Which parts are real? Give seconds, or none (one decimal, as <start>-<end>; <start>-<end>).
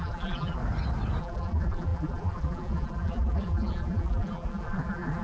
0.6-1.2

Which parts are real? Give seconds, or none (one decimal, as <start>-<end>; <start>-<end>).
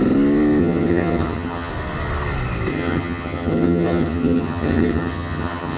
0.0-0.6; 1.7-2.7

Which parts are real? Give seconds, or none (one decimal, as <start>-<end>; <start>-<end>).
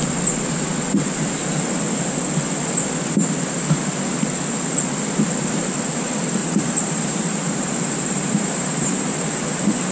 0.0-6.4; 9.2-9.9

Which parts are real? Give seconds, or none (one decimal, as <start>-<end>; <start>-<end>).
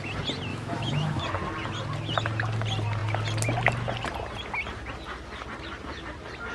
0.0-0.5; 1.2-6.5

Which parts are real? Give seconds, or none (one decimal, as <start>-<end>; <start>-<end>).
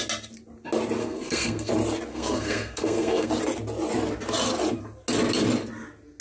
0.0-1.0; 1.7-2.1; 3.3-6.2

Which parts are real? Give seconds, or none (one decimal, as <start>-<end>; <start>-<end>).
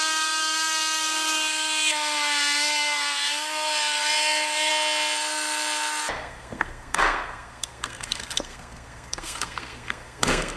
4.7-6.1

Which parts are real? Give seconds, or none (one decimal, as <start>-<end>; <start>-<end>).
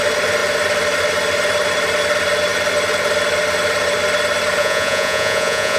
0.0-4.6